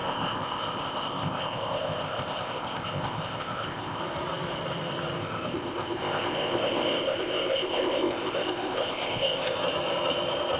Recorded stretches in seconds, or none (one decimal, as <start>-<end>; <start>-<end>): 4.0-5.2; 9.6-10.6